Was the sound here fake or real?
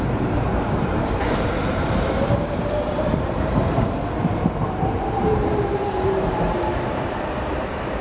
fake